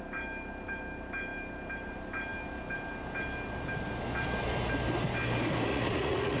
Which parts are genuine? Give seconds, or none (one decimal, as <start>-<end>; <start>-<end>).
0.0-5.7